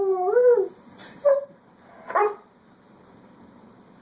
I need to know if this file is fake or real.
real